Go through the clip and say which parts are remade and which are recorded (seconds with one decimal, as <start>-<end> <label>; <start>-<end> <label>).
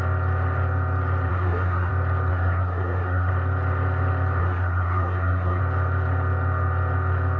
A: 0.0-1.3 recorded; 1.3-1.9 remade; 1.9-2.3 recorded; 2.3-3.3 remade; 3.3-4.4 recorded; 4.4-5.6 remade; 5.6-7.4 recorded